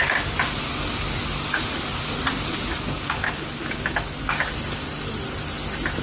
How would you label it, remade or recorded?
recorded